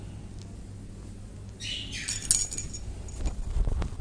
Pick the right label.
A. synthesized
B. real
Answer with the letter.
B